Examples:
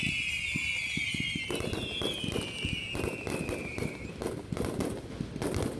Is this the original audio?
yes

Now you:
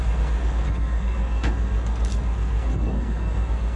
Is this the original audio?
no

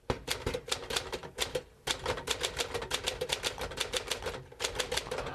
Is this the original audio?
yes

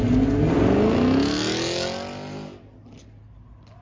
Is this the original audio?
yes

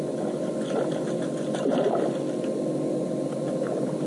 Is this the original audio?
yes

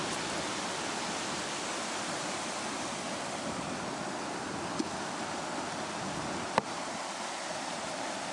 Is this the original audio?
yes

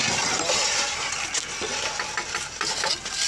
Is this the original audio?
yes